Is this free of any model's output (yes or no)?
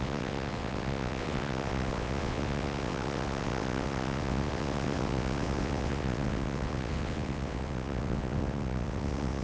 no